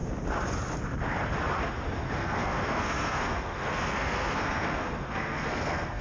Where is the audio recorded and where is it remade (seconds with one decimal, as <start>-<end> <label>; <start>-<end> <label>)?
0.0-2.2 recorded; 2.2-6.0 remade